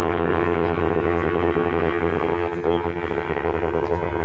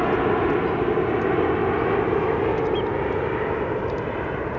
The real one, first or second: second